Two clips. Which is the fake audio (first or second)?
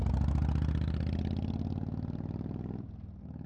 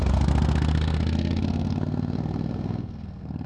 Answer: second